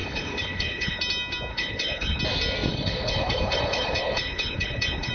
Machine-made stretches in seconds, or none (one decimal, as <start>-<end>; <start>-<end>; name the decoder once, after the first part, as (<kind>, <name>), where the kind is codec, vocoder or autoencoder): 0.0-1.0 (codec, HILCodec); 1.5-2.2; 2.7-5.1